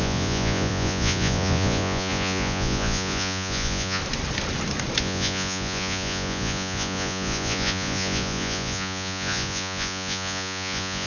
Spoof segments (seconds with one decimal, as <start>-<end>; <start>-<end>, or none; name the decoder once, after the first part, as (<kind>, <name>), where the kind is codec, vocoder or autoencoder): 0.0-4.0 (vocoder, Vocos); 5.0-11.1